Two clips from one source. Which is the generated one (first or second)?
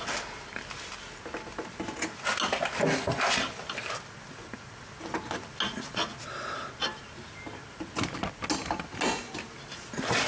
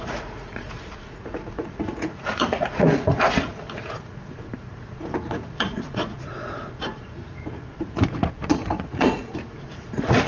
second